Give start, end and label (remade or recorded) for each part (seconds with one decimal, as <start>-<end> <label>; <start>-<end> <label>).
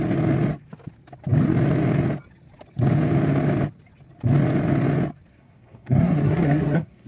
0.0-5.3 recorded; 5.3-7.1 remade